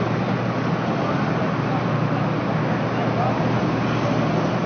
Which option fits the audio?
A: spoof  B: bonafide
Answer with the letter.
B